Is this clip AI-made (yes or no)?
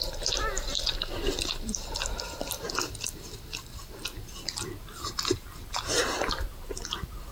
no